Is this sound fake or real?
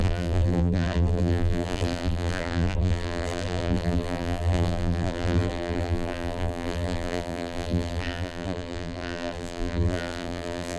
fake